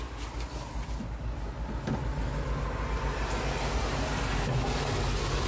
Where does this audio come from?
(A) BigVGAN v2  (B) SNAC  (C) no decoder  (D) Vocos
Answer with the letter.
C